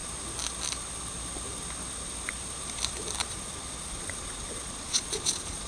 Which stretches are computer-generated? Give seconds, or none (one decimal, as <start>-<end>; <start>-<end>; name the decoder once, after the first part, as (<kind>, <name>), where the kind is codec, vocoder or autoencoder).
3.2-5.7 (vocoder, Vocos)